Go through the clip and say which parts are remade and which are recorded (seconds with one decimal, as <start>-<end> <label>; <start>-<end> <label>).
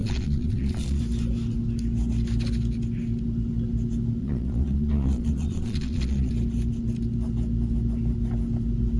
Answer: 0.0-1.0 remade; 1.0-4.2 recorded; 4.2-6.3 remade; 6.3-9.0 recorded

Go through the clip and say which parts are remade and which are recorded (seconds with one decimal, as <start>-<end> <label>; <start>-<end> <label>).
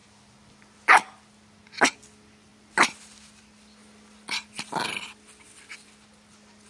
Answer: 0.0-6.7 recorded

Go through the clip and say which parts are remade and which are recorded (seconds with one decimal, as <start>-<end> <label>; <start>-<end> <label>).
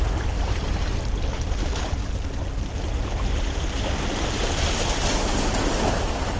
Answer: 0.0-6.4 recorded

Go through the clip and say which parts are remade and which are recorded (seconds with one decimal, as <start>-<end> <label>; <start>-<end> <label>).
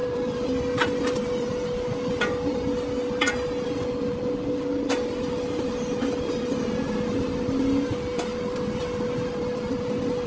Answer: 0.0-10.3 recorded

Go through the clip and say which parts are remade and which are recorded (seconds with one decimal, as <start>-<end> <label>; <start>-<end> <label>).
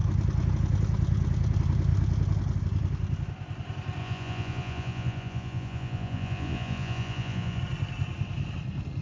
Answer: 0.0-4.0 recorded; 4.0-7.6 remade; 7.6-9.0 recorded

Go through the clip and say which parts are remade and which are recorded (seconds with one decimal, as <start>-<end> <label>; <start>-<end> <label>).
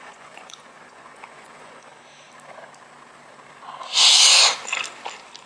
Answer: 0.0-1.9 remade; 1.9-5.5 recorded